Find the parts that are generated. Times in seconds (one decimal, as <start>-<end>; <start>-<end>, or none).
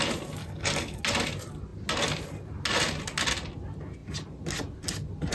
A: 0.4-1.0